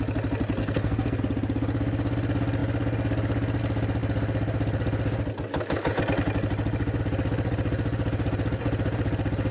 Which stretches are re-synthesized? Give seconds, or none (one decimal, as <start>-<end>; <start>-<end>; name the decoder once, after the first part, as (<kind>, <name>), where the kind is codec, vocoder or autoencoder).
0.6-1.2 (codec, SNAC)